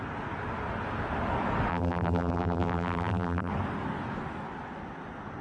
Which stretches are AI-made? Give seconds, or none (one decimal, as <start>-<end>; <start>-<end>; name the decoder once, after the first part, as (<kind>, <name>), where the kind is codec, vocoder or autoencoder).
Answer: 1.7-3.5 (vocoder, BigVGAN v2)